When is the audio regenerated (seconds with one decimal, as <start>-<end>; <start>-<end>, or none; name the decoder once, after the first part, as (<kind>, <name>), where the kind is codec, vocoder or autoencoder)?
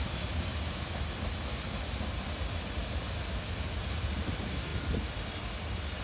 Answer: none